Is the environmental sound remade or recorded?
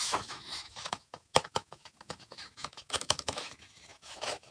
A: remade